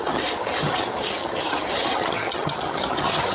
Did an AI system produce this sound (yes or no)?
yes